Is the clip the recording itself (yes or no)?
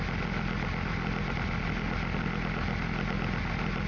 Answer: yes